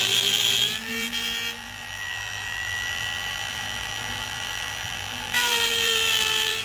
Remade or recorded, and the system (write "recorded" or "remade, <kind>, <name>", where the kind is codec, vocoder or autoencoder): remade, vocoder, BigVGAN v2